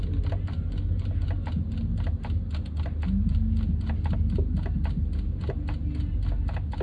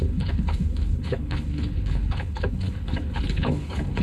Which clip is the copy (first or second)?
second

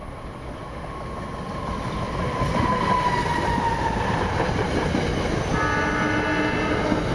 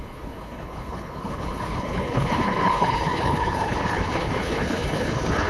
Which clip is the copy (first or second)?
second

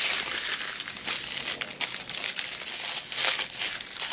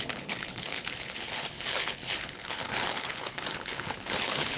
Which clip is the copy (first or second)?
second